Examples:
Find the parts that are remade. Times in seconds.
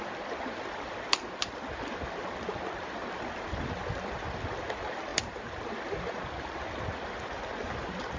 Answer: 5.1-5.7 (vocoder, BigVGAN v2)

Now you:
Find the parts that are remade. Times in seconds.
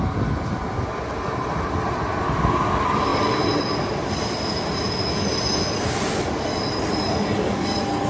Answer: none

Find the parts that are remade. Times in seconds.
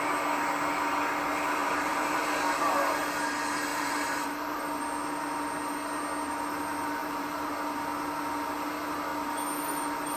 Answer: 1.6-2.2 (vocoder, BigVGAN v2); 3.7-4.6; 7.0-7.5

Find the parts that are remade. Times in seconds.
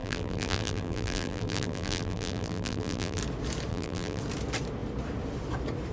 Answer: 0.0-3.2 (vocoder, BigVGAN v2); 3.7-4.2